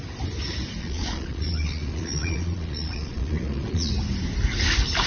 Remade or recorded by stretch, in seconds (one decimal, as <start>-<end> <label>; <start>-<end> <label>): 0.0-0.8 recorded; 0.8-3.9 remade; 3.9-5.1 recorded